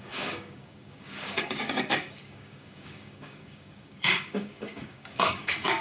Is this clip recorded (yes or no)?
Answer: no